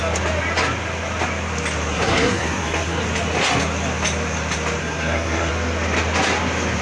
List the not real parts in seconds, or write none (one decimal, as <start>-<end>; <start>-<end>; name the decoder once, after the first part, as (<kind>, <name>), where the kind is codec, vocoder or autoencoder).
1.9-3.0 (codec, SNAC); 4.8-5.5